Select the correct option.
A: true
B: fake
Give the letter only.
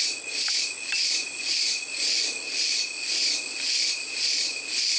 A